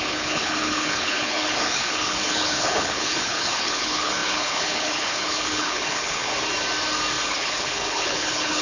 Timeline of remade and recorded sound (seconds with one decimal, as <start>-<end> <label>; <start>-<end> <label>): 0.0-6.3 remade; 6.3-7.3 recorded; 7.3-8.6 remade